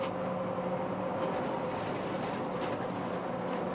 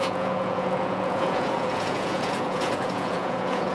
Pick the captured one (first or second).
first